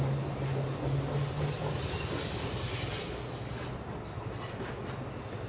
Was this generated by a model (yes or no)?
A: no